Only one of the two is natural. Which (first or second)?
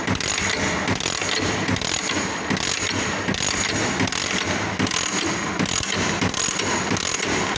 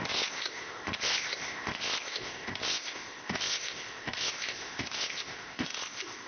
first